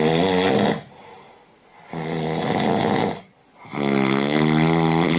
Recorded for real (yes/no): yes